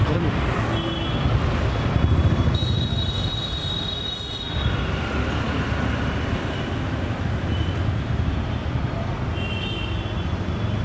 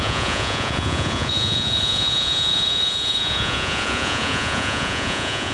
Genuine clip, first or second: first